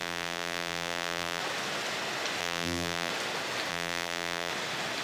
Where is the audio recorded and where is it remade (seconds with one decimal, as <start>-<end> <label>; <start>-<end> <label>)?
0.0-1.4 remade; 1.4-2.4 recorded; 2.4-3.1 remade; 3.1-3.7 recorded; 3.7-4.5 remade; 4.5-5.0 recorded